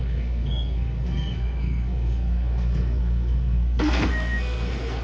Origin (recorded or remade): remade